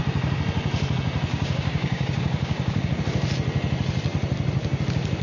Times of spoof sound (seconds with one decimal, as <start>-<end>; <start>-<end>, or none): 1.3-3.0